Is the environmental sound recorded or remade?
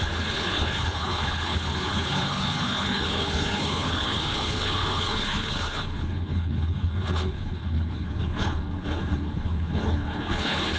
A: remade